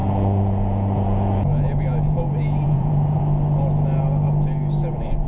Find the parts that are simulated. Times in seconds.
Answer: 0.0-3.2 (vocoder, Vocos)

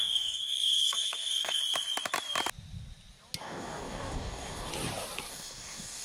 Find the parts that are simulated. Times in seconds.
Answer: 0.0-1.6 (codec, DAC); 3.4-4.7; 5.3-6.0

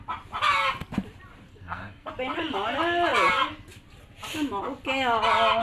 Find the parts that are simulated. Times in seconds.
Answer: 1.5-2.1 (codec, SNAC)

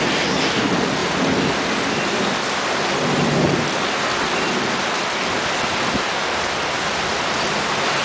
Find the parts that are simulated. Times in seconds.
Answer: none

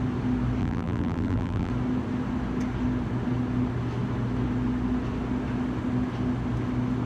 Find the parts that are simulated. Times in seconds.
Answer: 0.6-1.7 (vocoder, BigVGAN v2)

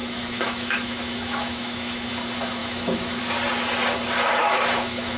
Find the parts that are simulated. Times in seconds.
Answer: 0.0-2.1 (autoencoder, DAC-VAE); 2.6-3.2; 4.4-5.2

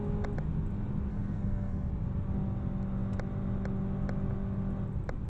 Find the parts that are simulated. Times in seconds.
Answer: 1.1-1.9 (codec, SNAC)